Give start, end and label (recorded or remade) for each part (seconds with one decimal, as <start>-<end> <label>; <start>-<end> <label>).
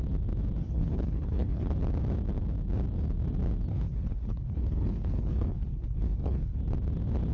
0.0-0.6 recorded; 0.6-1.7 remade; 1.7-3.7 recorded; 3.7-6.6 remade; 6.6-7.3 recorded